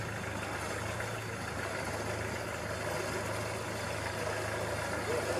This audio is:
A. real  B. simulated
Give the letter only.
A